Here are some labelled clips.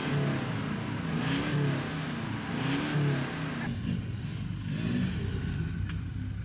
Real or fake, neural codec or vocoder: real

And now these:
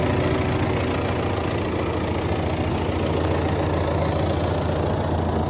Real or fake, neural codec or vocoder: real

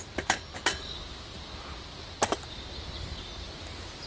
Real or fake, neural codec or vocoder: real